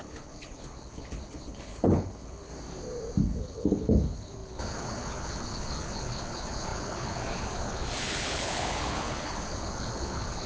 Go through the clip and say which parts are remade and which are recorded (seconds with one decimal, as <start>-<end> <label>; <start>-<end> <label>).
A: 0.0-2.5 remade; 2.5-3.2 recorded; 3.2-10.5 remade